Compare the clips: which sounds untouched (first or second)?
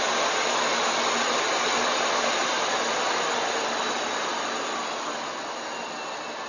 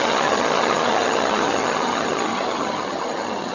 first